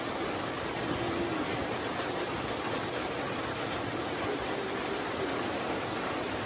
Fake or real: real